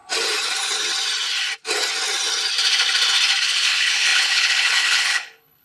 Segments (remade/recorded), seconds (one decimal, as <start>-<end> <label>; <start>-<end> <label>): 0.0-3.4 recorded; 3.4-5.6 remade